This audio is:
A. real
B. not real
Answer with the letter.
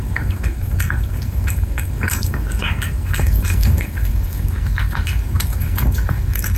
B